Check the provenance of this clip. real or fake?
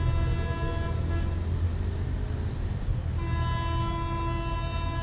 real